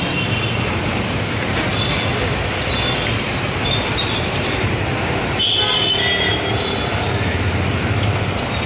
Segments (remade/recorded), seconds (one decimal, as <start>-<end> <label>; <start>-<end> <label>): 0.0-8.7 recorded